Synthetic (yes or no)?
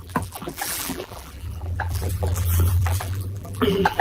yes